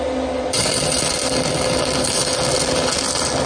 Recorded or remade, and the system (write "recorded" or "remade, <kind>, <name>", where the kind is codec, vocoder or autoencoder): recorded